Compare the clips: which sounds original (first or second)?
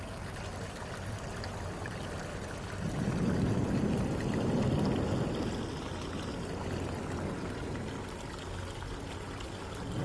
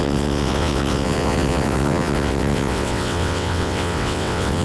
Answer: first